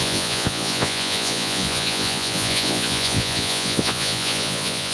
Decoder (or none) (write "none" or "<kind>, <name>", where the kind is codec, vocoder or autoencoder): vocoder, Vocos